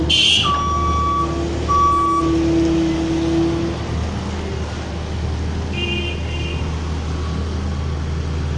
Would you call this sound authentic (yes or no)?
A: yes